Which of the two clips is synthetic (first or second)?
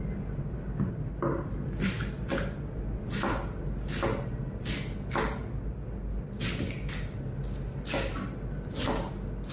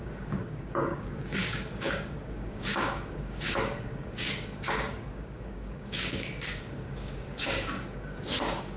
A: second